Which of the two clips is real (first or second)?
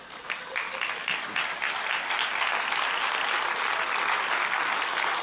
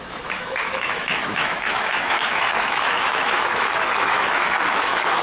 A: first